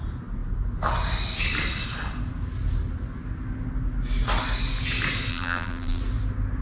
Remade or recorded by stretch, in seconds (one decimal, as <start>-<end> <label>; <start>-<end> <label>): 0.0-5.3 recorded; 5.3-6.0 remade; 6.0-6.6 recorded